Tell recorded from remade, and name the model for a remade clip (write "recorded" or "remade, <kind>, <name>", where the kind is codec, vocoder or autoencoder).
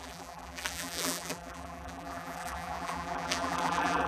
remade, vocoder, BigVGAN v2